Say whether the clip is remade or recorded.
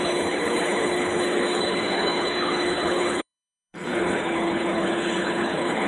remade